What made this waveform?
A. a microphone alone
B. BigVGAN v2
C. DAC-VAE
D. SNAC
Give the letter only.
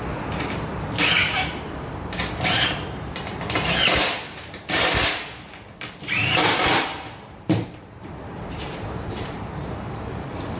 B